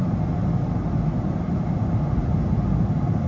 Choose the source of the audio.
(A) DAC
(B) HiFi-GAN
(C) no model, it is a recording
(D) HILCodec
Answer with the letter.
C